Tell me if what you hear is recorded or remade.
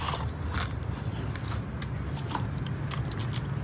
recorded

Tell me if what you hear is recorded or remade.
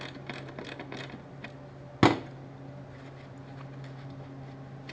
recorded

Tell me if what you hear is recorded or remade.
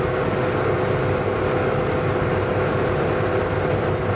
recorded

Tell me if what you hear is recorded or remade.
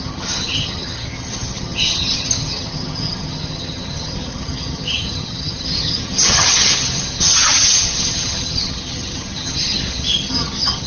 remade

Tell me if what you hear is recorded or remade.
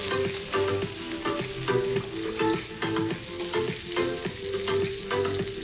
recorded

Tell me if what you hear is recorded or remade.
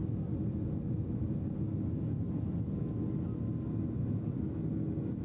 recorded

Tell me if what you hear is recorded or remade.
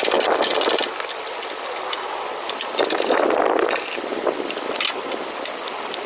recorded